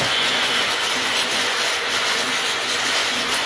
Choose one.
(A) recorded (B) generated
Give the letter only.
B